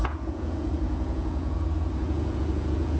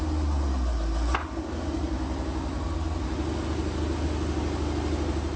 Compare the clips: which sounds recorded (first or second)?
second